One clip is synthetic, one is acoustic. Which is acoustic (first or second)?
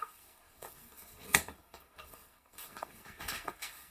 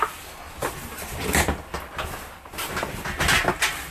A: second